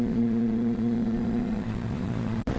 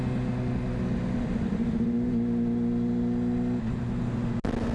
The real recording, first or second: second